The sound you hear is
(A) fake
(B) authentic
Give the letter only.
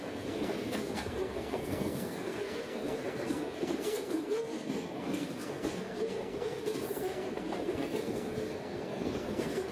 A